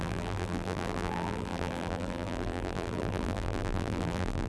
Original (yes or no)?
no